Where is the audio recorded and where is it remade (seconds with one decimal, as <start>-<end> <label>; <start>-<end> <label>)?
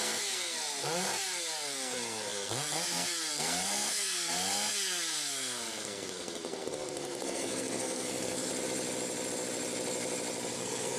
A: 0.0-8.5 remade; 8.5-10.5 recorded; 10.5-11.0 remade